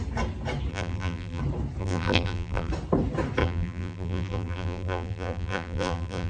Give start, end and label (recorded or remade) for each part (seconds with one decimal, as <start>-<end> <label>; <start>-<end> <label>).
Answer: 0.0-0.7 recorded; 0.7-1.4 remade; 1.4-1.8 recorded; 1.8-2.7 remade; 2.7-3.4 recorded; 3.4-6.3 remade

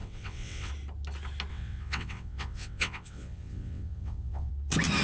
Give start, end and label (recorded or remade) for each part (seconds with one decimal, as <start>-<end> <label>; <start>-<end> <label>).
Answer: 0.0-0.7 remade; 0.7-1.5 recorded; 1.5-4.5 remade; 4.5-5.0 recorded

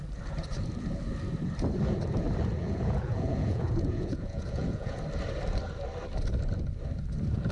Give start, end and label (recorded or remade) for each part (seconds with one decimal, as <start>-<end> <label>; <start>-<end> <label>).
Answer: 0.0-2.6 recorded; 2.6-5.0 remade; 5.0-7.5 recorded

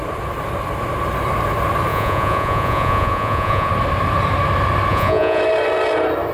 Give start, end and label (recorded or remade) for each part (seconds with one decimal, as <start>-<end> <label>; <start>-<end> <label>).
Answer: 0.0-1.9 recorded; 1.9-3.7 remade; 3.7-4.9 recorded; 4.9-5.4 remade; 5.4-6.3 recorded

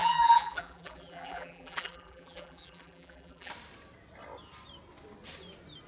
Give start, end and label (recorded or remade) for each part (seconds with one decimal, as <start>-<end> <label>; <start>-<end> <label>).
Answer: 0.0-3.5 remade; 3.5-5.9 recorded

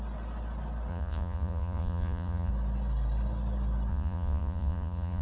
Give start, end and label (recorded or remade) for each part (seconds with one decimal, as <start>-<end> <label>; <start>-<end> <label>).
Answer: 0.0-0.9 recorded; 0.9-2.5 remade; 2.5-3.9 recorded; 3.9-5.2 remade

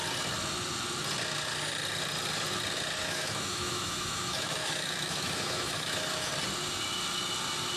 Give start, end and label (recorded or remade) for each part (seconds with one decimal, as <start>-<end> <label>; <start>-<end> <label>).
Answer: 0.0-3.0 recorded; 3.0-6.3 remade; 6.3-7.8 recorded